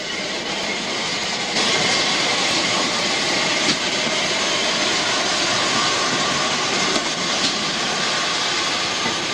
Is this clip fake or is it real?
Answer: fake